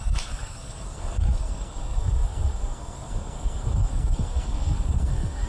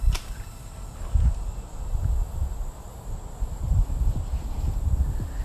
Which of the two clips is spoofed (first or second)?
first